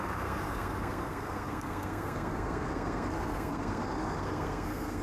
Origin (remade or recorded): remade